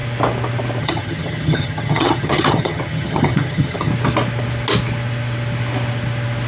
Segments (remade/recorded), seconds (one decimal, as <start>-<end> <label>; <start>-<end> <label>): 0.0-0.8 recorded; 0.8-3.9 remade; 3.9-6.5 recorded